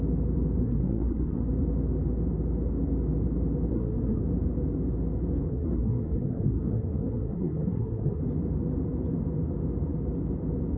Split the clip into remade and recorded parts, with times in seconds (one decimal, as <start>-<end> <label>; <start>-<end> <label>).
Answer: 0.0-0.6 recorded; 0.6-1.5 remade; 1.5-3.7 recorded; 3.7-4.2 remade; 4.2-5.5 recorded; 5.5-8.2 remade; 8.2-10.8 recorded